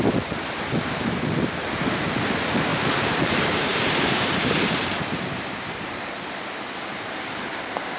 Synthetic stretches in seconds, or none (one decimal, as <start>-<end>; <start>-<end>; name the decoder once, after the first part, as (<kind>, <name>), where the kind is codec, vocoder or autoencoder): 2.7-6.4 (vocoder, BigVGAN v2)

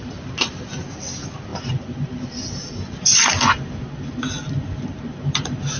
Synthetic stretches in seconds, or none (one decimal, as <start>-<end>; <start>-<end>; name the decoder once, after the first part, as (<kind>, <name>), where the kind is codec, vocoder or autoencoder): none

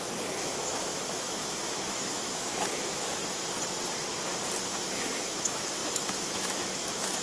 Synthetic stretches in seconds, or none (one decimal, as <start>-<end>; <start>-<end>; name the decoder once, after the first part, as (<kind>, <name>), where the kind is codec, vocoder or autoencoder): 0.0-3.2 (autoencoder, DAC-VAE); 4.7-7.2

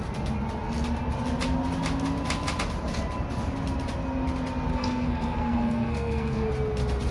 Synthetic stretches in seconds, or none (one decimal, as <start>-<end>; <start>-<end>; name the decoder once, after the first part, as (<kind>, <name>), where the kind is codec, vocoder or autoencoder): 4.7-6.5 (codec, SNAC)